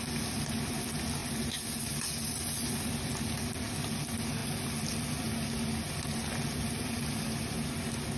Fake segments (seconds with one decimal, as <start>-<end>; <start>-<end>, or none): none